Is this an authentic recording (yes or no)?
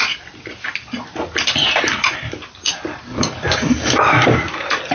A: no